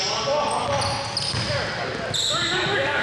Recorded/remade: recorded